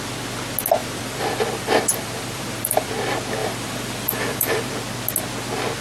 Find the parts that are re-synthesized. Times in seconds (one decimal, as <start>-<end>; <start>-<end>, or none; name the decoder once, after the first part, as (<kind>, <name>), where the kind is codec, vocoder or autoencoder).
0.8-2.9 (vocoder, BigVGAN v2); 3.4-4.7